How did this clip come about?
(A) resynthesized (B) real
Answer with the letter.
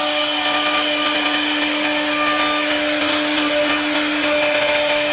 B